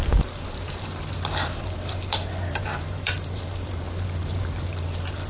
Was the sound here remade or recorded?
remade